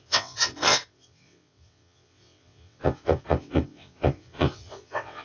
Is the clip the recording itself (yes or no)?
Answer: no